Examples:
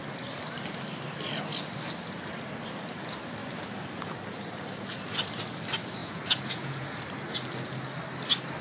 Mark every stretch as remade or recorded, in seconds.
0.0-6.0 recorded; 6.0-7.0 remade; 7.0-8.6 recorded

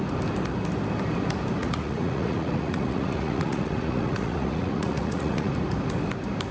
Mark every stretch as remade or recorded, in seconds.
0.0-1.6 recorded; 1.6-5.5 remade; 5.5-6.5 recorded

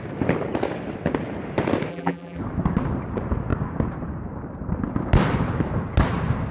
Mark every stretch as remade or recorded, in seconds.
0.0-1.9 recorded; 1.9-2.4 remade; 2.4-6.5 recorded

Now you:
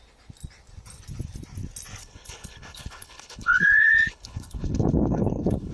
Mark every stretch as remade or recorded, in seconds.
0.0-2.0 recorded; 2.0-5.7 remade